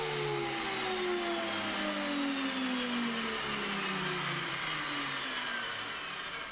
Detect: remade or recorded recorded